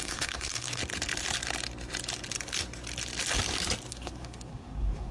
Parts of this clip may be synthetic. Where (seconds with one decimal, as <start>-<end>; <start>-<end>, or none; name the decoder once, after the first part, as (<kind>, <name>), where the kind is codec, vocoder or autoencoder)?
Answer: 0.0-0.8 (codec, SNAC); 3.9-5.1